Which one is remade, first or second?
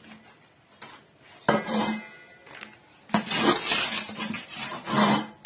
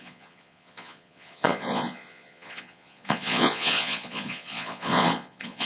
second